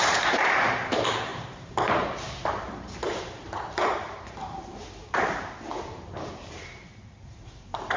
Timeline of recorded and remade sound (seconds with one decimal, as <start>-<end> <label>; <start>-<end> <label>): 0.0-8.0 remade